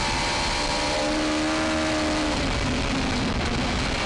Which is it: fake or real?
real